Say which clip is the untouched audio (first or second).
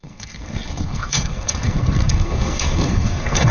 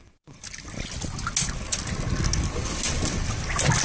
second